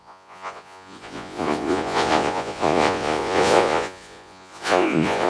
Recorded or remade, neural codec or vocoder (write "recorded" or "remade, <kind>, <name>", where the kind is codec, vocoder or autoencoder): remade, vocoder, Vocos